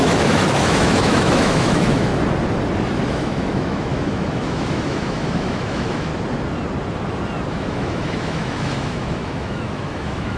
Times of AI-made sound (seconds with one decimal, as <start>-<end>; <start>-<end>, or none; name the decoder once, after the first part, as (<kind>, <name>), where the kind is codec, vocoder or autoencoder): 0.0-2.1 (autoencoder, DAC-VAE); 3.1-6.1; 7.5-10.4